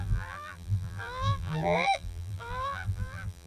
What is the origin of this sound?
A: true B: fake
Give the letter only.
B